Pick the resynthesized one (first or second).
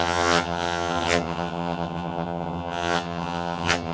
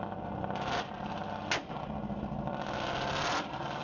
first